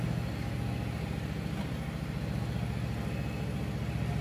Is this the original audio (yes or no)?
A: yes